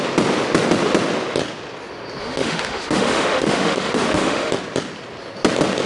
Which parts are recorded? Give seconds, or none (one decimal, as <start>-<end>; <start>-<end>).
0.0-2.2; 4.5-5.9